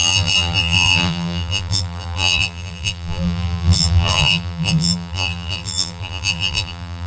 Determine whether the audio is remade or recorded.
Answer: remade